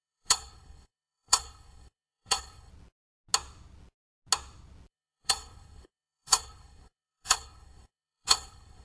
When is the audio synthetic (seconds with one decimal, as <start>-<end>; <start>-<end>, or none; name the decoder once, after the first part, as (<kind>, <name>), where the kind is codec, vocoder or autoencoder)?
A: 0.0-2.7 (codec, HILCodec); 4.9-8.8